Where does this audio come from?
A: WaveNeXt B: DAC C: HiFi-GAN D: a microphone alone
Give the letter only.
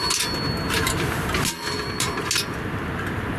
D